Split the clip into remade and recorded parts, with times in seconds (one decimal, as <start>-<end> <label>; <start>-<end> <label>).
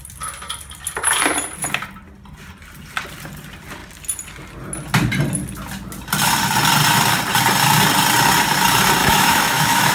0.0-9.0 recorded; 9.0-9.9 remade